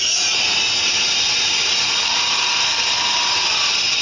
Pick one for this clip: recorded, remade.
recorded